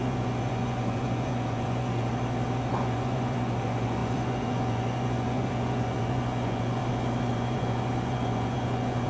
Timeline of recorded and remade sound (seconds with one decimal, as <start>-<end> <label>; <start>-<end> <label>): 0.0-2.1 remade; 2.1-2.7 recorded; 2.7-6.8 remade; 6.8-7.3 recorded; 7.3-9.1 remade